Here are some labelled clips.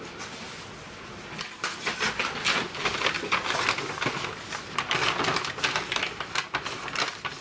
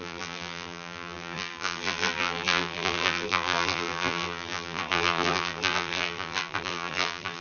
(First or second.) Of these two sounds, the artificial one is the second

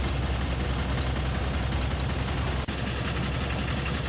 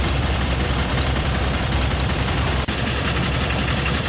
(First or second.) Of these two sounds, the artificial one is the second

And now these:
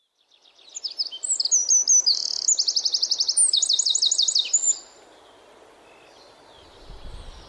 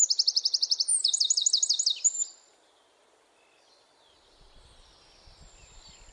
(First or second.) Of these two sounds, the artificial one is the second